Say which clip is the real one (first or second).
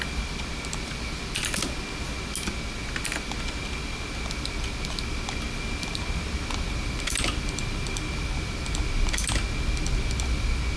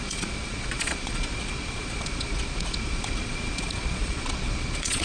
first